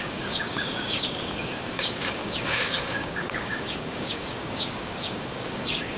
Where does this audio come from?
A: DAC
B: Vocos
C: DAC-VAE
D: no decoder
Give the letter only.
A